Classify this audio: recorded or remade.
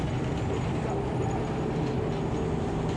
recorded